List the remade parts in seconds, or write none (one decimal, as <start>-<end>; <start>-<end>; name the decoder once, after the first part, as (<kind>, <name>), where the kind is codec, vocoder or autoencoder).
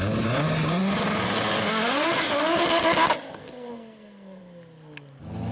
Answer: 3.3-4.4 (codec, SNAC)